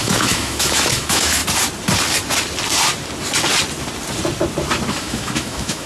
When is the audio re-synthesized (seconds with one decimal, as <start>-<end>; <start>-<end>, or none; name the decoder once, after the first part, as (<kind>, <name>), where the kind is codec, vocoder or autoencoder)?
0.0-1.4 (autoencoder, DAC-VAE); 4.9-5.9